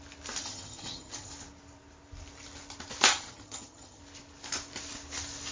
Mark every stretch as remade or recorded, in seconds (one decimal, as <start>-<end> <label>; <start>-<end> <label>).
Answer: 0.0-0.4 recorded; 0.4-1.3 remade; 1.3-3.1 recorded; 3.1-4.0 remade; 4.0-5.5 recorded